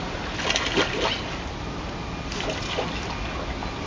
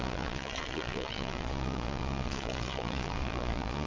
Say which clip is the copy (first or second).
second